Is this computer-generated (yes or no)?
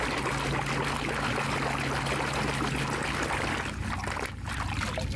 no